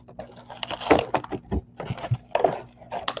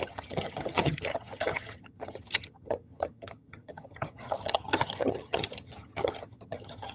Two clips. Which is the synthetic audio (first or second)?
second